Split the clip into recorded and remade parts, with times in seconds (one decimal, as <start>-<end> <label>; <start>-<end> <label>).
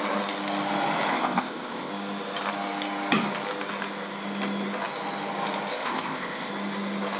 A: 0.0-1.1 recorded; 1.1-1.9 remade; 1.9-5.7 recorded; 5.7-6.5 remade; 6.5-7.2 recorded